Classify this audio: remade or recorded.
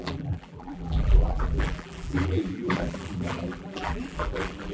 remade